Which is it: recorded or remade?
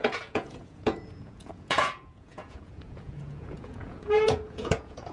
remade